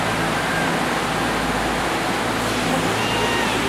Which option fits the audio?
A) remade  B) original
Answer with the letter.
B